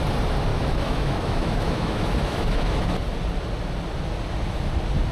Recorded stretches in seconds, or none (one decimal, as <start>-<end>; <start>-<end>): 0.0-0.5; 2.9-5.1